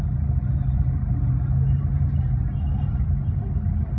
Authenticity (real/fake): real